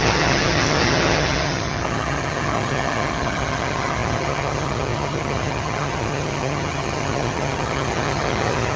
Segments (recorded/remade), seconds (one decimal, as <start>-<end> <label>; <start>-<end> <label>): 0.0-8.8 remade